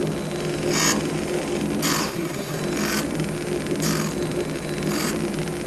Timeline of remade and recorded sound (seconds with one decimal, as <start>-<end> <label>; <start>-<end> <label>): 0.0-2.0 recorded; 2.0-2.6 remade; 2.6-5.7 recorded